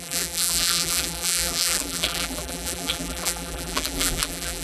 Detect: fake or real fake